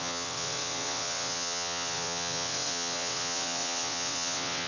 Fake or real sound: fake